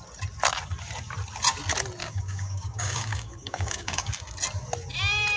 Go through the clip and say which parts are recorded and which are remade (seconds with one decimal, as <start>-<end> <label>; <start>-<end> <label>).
0.0-2.0 recorded; 2.0-4.1 remade; 4.1-5.4 recorded